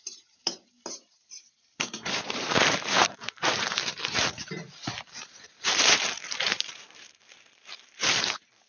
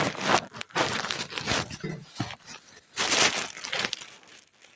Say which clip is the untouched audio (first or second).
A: second